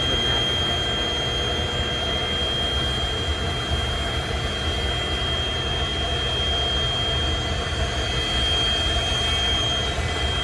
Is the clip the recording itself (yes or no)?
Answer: yes